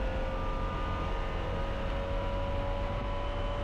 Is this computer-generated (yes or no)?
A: no